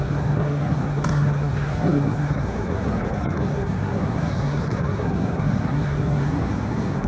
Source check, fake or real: fake